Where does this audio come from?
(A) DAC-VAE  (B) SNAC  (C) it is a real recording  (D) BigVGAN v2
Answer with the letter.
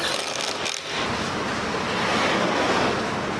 C